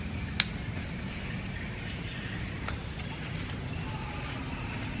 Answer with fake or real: real